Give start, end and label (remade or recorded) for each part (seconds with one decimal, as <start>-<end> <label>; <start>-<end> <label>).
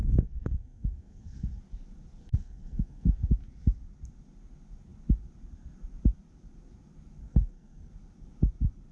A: 0.0-1.6 remade; 1.6-2.2 recorded; 2.2-3.3 remade; 3.3-7.2 recorded; 7.2-7.9 remade; 7.9-8.9 recorded